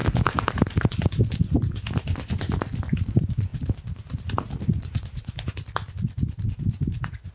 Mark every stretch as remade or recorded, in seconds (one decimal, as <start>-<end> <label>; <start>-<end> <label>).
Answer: 0.0-0.5 remade; 0.5-7.3 recorded